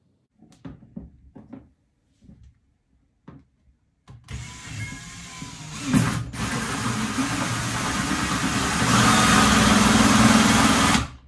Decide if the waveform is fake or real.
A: real